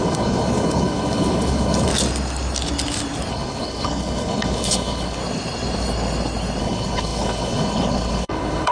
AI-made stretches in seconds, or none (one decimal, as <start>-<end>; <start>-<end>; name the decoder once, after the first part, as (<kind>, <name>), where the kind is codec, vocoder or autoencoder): 0.0-1.9 (codec, HILCodec); 3.3-5.2; 6.6-8.7